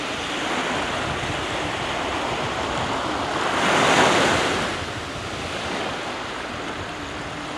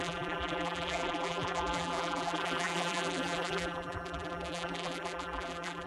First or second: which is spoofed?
second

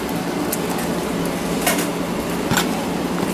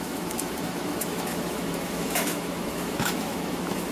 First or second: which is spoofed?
second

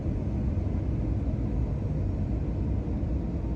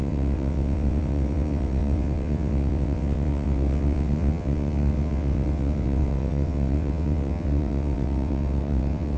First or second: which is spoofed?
second